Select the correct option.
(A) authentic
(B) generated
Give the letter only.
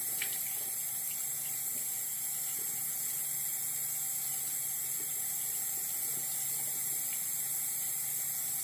A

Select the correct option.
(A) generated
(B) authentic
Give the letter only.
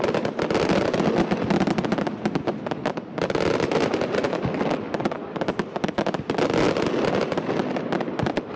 B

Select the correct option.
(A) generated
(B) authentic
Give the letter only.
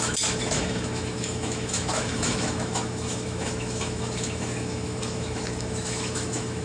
A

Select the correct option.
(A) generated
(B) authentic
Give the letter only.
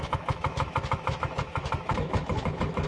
A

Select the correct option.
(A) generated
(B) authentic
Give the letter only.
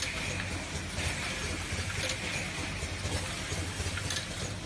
B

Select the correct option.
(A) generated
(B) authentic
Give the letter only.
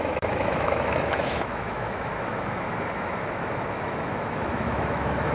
A